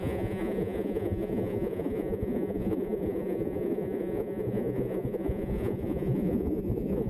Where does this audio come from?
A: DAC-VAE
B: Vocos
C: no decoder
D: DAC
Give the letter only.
B